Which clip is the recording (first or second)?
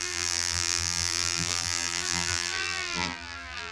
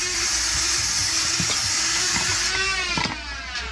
second